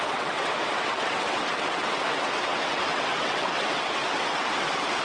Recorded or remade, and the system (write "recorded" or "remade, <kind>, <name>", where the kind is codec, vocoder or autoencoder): remade, vocoder, WaveNeXt